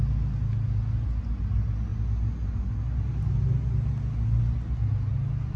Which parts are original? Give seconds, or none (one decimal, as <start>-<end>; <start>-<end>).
0.0-5.6